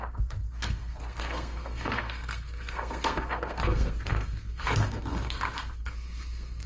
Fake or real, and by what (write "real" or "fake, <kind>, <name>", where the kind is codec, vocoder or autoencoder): fake, codec, SNAC